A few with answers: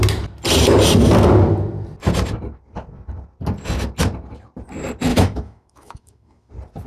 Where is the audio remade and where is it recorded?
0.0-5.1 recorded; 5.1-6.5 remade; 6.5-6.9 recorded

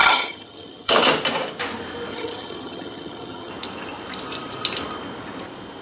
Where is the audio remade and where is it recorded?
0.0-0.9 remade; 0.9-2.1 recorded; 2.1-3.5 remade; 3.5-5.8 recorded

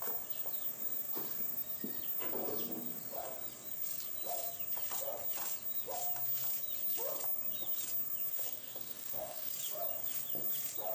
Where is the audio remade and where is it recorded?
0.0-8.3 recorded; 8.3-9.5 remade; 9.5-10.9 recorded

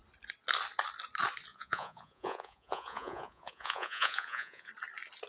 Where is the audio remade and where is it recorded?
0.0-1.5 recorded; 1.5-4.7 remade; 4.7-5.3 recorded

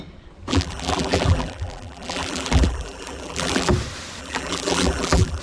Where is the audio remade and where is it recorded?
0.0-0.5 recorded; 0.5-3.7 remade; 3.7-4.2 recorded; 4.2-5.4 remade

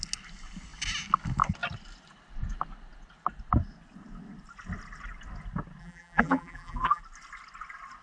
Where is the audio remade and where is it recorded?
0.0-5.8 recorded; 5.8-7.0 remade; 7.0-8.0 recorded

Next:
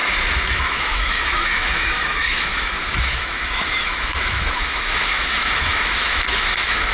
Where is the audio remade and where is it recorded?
0.0-0.5 recorded; 0.5-6.9 remade

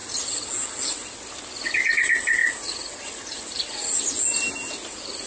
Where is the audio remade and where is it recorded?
0.0-5.3 recorded